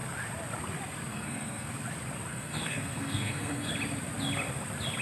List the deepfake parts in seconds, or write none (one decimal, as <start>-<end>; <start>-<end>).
1.1-1.7; 2.3-3.7